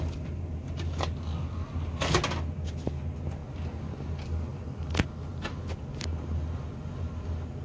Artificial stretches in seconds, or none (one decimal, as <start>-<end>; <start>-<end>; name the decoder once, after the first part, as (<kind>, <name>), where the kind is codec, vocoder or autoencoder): none